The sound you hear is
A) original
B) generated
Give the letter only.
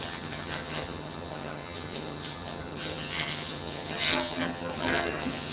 B